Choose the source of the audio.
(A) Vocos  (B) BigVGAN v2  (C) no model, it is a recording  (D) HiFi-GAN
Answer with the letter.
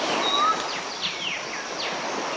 C